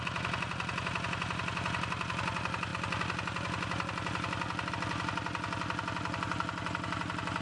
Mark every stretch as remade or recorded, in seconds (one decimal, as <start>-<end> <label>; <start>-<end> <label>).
0.0-7.4 recorded